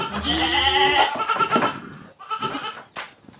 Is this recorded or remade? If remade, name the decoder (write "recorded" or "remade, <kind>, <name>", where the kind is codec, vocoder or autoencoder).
recorded